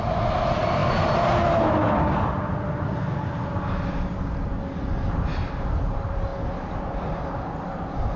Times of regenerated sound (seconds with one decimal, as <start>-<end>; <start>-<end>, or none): none